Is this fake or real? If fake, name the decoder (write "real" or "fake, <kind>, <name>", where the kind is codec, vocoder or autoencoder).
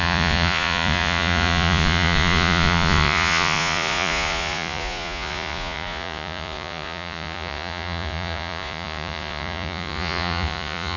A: fake, vocoder, Vocos